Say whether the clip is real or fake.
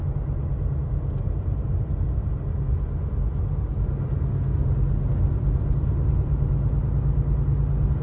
real